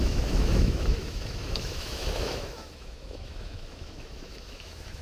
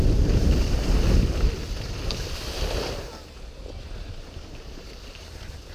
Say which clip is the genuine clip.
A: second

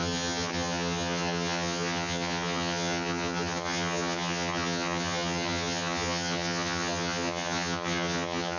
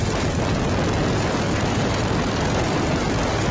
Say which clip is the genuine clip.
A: second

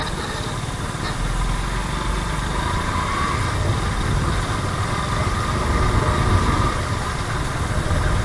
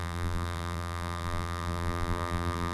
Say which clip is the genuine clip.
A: first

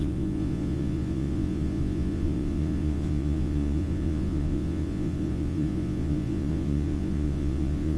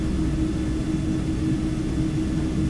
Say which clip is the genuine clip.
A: second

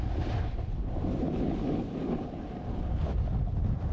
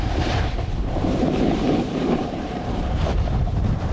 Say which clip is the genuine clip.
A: first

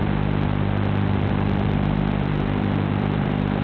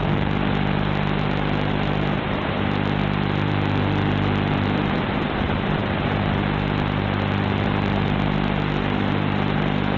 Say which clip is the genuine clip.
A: second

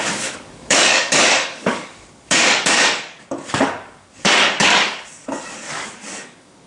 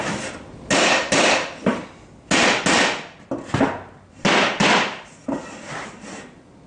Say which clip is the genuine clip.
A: second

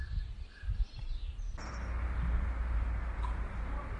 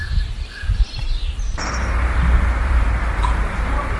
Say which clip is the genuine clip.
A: first